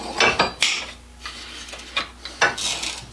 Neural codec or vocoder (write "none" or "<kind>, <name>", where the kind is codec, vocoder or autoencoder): none